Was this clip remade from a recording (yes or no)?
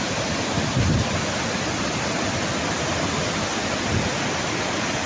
no